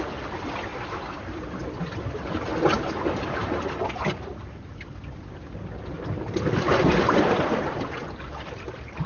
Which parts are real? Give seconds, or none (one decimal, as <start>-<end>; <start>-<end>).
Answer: 0.0-0.7; 2.9-3.4; 3.9-5.0; 7.1-9.1